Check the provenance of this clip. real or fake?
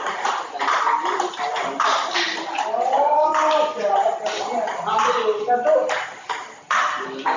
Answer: real